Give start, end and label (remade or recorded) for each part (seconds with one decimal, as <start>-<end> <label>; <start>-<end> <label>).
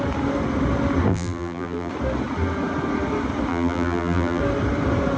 0.0-1.1 recorded; 1.1-1.9 remade; 1.9-3.5 recorded; 3.5-4.4 remade; 4.4-5.2 recorded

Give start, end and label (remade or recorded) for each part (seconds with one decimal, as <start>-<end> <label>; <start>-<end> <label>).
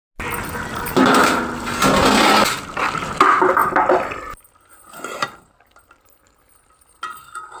0.0-7.6 recorded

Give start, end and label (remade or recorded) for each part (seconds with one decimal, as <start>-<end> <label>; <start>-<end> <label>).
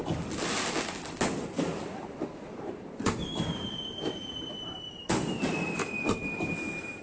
0.0-2.3 recorded; 2.3-5.1 remade; 5.1-7.0 recorded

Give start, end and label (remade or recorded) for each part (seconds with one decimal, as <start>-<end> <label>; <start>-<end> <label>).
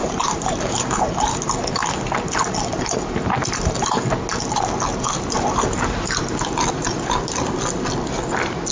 0.0-1.0 remade; 1.0-8.7 recorded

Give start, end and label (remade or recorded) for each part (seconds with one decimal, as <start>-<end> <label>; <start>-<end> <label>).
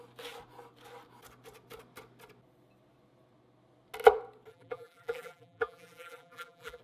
0.0-4.5 recorded; 4.5-6.8 remade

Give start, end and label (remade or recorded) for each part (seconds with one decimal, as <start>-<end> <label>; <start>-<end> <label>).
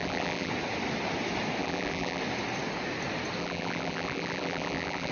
0.0-0.5 remade; 0.5-1.6 recorded; 1.6-2.2 remade; 2.2-3.4 recorded; 3.4-5.1 remade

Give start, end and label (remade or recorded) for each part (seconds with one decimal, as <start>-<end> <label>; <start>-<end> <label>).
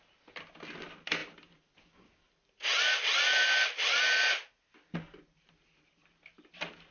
0.0-1.2 recorded; 1.2-4.0 remade; 4.0-6.9 recorded